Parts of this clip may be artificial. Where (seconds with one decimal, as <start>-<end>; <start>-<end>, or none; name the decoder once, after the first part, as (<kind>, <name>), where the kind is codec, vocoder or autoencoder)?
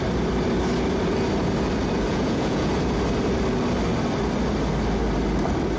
2.1-2.7 (vocoder, Vocos)